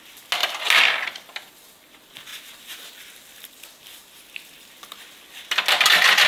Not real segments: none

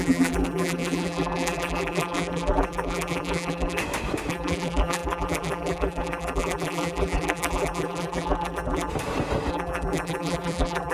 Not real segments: 0.0-3.8 (vocoder, BigVGAN v2); 4.3-8.9; 9.5-10.9

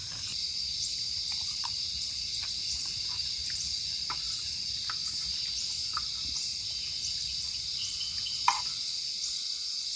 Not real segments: 0.0-0.6 (vocoder, BigVGAN v2); 1.4-4.1

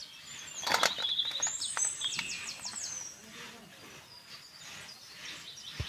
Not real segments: none

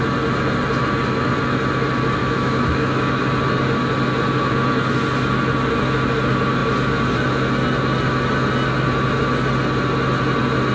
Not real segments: 2.2-3.2 (autoencoder, DAC-VAE)